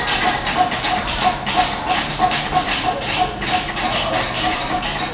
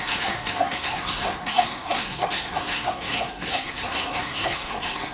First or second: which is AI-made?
second